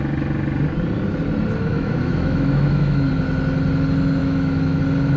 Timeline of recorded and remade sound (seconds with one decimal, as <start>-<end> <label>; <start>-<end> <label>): 0.0-1.7 recorded; 1.7-3.1 remade; 3.1-4.2 recorded; 4.2-4.8 remade; 4.8-5.2 recorded